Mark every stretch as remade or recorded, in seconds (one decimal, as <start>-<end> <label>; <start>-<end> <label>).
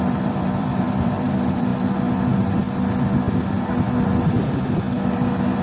0.0-1.7 remade; 1.7-5.1 recorded; 5.1-5.6 remade